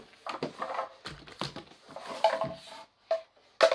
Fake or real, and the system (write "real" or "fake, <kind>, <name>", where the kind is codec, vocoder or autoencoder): real